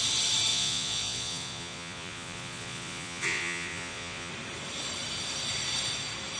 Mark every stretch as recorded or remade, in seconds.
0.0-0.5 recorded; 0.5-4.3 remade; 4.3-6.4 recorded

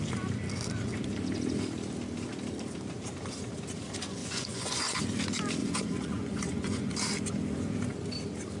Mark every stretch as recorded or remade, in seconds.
0.0-4.2 recorded; 4.2-5.0 remade; 5.0-5.6 recorded; 5.6-6.9 remade; 6.9-8.6 recorded

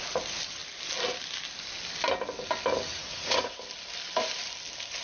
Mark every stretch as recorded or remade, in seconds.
0.0-2.9 recorded; 2.9-3.5 remade; 3.5-5.0 recorded

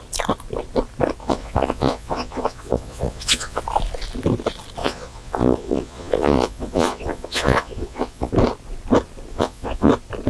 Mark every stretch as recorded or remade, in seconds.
0.0-1.2 recorded; 1.2-3.6 remade; 3.6-4.8 recorded; 4.8-8.3 remade; 8.3-9.3 recorded; 9.3-9.9 remade; 9.9-10.3 recorded

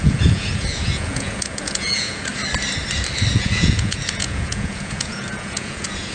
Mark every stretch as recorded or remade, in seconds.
0.0-2.3 remade; 2.3-3.3 recorded; 3.3-6.1 remade

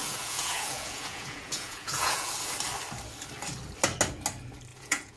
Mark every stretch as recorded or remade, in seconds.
0.0-2.3 remade; 2.3-4.7 recorded; 4.7-5.2 remade

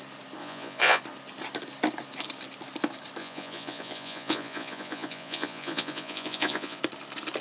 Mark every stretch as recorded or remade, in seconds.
0.0-0.4 recorded; 0.4-1.0 remade; 1.0-3.2 recorded; 3.2-6.8 remade; 6.8-7.4 recorded

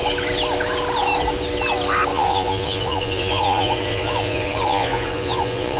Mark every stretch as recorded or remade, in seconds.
0.0-2.1 recorded; 2.1-5.8 remade